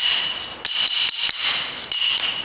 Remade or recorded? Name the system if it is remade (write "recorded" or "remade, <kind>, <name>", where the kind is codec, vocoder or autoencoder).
remade, vocoder, BigVGAN v2